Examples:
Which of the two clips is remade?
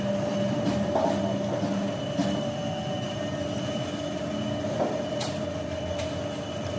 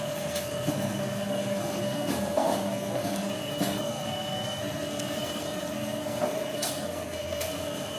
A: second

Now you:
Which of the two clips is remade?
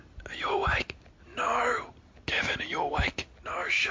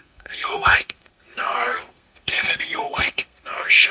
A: second